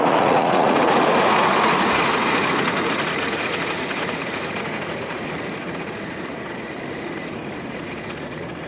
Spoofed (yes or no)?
yes